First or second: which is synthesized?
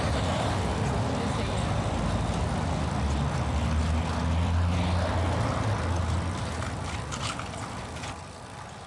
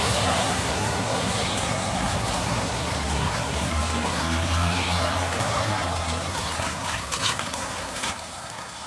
second